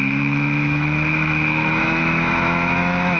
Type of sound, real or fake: fake